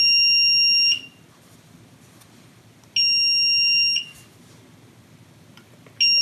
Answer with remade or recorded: recorded